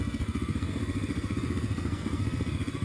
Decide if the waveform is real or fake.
fake